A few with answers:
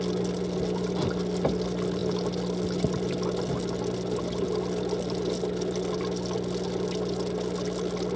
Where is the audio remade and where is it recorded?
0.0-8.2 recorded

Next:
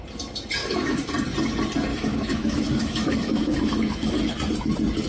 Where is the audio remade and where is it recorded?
0.0-0.6 recorded; 0.6-1.1 remade; 1.1-1.9 recorded; 1.9-4.3 remade; 4.3-5.1 recorded

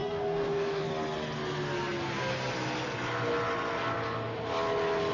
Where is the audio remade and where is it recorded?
0.0-0.8 remade; 0.8-5.1 recorded

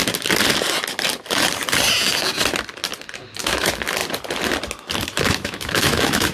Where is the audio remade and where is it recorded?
0.0-3.4 recorded; 3.4-4.0 remade; 4.0-5.2 recorded; 5.2-6.3 remade

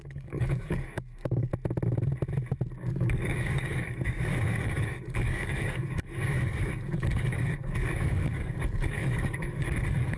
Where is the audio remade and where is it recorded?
0.0-1.5 remade; 1.5-2.9 recorded; 2.9-10.2 remade

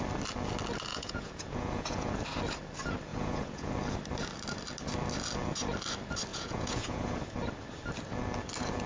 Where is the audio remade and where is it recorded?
0.0-0.9 recorded; 0.9-2.1 remade; 2.1-3.1 recorded; 3.1-3.7 remade; 3.7-6.3 recorded; 6.3-7.2 remade; 7.2-8.9 recorded

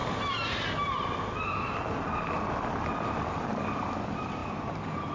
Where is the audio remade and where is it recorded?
0.0-5.1 recorded